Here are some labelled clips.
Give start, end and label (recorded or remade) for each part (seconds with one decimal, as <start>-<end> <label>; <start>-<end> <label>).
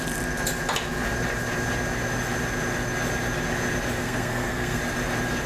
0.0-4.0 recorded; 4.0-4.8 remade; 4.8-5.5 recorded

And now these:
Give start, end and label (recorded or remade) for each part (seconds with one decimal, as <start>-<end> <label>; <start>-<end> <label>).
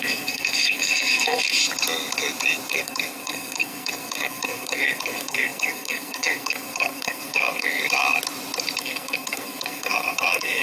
0.0-1.6 remade; 1.6-2.7 recorded; 2.7-7.8 remade; 7.8-8.8 recorded; 8.8-10.6 remade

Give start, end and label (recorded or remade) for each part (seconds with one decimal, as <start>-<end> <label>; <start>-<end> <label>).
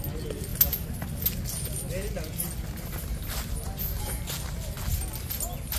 0.0-5.8 recorded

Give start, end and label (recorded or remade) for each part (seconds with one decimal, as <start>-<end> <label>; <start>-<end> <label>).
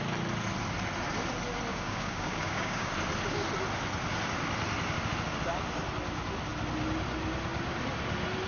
0.0-1.7 recorded; 1.7-2.9 remade; 2.9-8.5 recorded